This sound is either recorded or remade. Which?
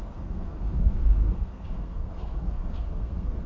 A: remade